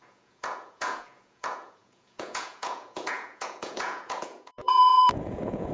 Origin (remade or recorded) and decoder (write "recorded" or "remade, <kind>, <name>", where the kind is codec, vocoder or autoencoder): remade, vocoder, Vocos